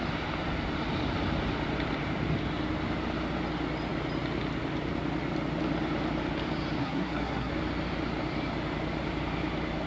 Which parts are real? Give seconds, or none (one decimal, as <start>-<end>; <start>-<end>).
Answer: 0.0-6.8; 7.5-9.9